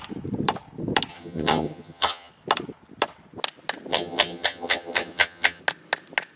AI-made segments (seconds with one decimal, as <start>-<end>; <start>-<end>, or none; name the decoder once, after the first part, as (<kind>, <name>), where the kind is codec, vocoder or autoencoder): 1.1-2.3 (vocoder, HiFi-GAN); 3.9-5.6